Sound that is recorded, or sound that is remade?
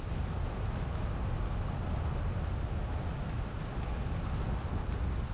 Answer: recorded